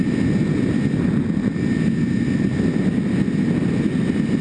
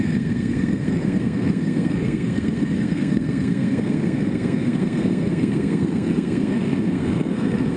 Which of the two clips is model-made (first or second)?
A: second